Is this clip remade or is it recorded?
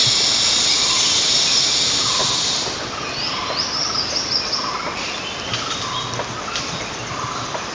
recorded